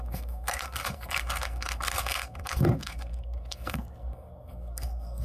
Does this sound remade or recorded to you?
remade